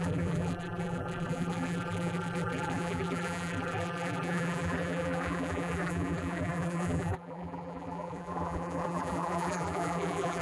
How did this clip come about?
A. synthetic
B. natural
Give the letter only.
A